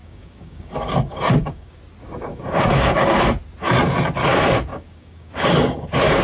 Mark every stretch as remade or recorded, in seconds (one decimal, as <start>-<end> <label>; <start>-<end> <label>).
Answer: 0.0-1.8 remade; 1.8-2.3 recorded; 2.3-3.3 remade; 3.3-4.7 recorded; 4.7-6.2 remade